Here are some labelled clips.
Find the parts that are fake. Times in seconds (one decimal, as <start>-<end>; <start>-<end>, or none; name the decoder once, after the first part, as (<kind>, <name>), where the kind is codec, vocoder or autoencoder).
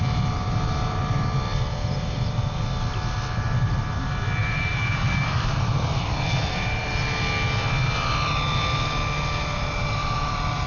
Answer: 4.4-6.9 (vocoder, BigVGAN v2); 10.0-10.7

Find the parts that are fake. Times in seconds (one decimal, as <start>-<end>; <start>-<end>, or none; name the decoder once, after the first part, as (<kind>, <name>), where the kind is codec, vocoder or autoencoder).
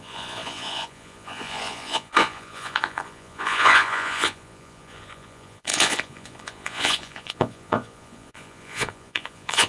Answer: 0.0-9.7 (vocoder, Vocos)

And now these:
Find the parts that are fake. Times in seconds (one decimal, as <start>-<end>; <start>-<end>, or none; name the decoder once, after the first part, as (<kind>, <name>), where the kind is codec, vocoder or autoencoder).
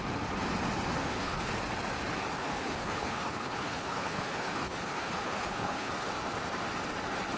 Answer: 1.0-1.5 (codec, HILCodec); 2.4-5.9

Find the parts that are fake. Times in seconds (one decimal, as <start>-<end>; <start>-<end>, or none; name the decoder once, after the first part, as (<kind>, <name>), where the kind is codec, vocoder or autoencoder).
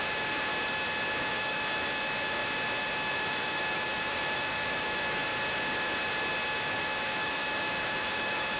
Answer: 0.0-0.5 (autoencoder, DAC-VAE); 1.3-2.4; 3.1-5.2; 6.5-8.6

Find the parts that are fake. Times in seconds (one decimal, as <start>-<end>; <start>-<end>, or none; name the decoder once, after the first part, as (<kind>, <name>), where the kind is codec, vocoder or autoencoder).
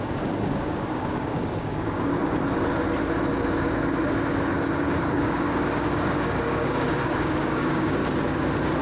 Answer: 0.0-2.1 (codec, DAC); 4.8-8.0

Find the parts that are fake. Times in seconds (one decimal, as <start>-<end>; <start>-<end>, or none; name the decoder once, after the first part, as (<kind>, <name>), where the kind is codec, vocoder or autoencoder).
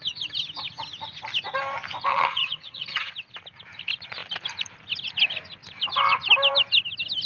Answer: 2.1-3.1 (vocoder, HiFi-GAN)